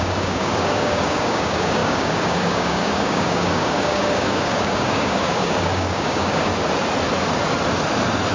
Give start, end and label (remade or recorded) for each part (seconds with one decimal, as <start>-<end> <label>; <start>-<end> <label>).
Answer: 0.0-6.5 remade; 6.5-8.3 recorded